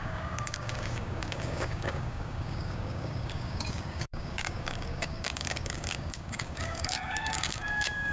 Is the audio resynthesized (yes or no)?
yes